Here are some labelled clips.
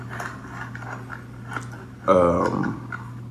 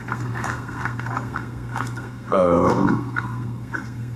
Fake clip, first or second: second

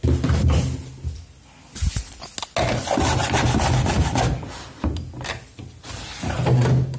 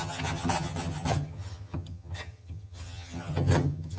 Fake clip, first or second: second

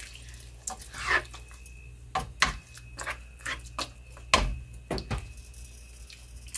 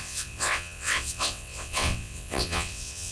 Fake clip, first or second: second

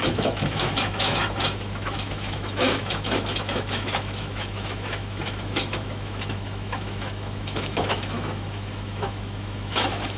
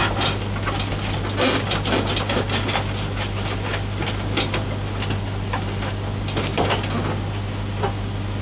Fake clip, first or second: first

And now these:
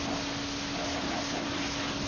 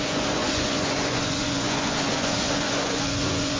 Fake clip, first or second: second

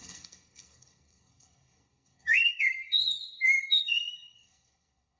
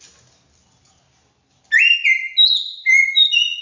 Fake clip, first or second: first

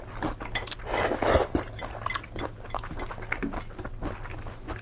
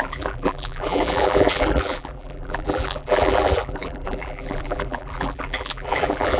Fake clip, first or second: second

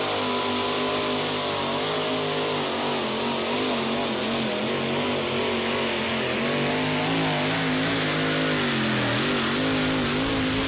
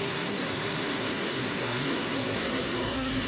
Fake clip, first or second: second